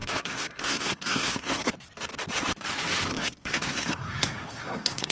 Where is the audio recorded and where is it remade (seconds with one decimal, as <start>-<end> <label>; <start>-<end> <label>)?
0.0-1.7 remade; 1.7-3.1 recorded; 3.1-5.1 remade